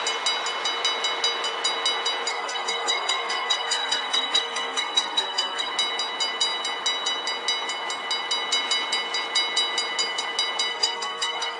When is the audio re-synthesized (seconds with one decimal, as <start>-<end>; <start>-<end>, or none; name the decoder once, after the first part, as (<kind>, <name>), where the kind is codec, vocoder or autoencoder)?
2.3-5.7 (codec, SNAC); 10.7-11.6